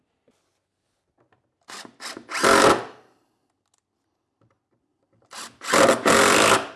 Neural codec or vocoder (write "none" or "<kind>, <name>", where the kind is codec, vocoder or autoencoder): none